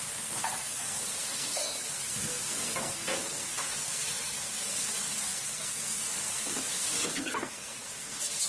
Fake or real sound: fake